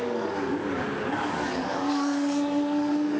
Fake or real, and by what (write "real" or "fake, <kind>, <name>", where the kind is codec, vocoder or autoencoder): fake, codec, DAC